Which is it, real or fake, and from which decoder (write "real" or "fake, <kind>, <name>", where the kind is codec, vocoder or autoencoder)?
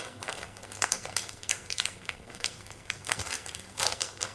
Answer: fake, codec, SNAC